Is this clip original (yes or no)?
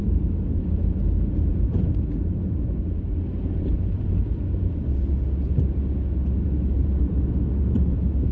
yes